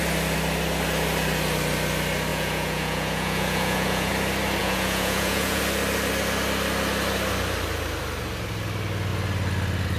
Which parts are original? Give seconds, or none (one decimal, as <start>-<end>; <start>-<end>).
0.0-2.3; 4.1-4.6; 5.6-10.0

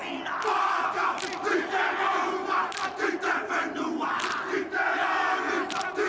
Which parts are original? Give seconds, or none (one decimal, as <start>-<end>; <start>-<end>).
0.0-6.1

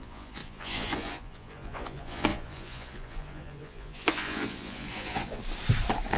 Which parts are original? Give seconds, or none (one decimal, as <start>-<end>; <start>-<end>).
5.4-6.2

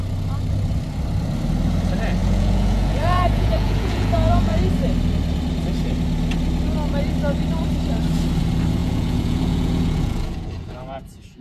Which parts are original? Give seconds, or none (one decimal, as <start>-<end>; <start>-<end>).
0.0-2.2; 4.6-8.8

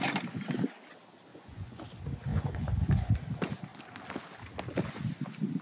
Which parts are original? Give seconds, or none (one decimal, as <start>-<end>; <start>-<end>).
0.0-1.3; 1.8-2.3; 3.1-5.6

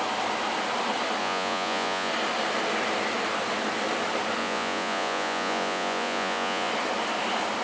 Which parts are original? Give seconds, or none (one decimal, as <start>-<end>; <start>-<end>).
0.0-1.2; 2.1-4.4; 6.7-7.6

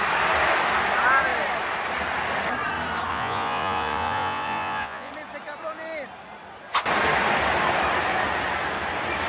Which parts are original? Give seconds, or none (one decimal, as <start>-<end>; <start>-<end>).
0.0-3.1; 5.1-9.3

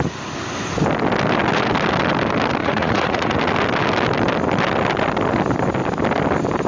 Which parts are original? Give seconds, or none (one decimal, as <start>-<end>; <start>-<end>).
0.0-2.6; 3.4-6.7